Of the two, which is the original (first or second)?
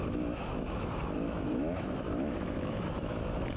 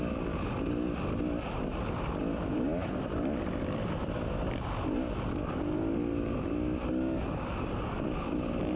second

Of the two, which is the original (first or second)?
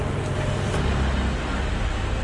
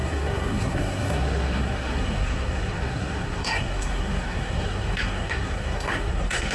first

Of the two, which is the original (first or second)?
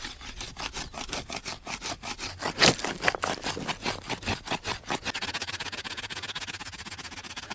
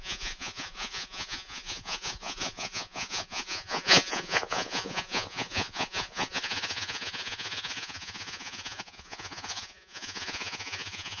first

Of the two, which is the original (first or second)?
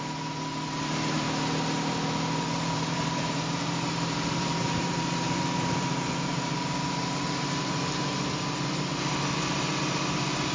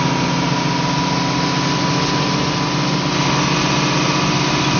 second